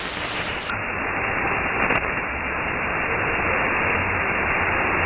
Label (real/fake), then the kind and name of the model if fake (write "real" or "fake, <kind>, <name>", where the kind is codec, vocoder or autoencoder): real